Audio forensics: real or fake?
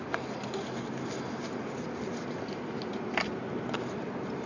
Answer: real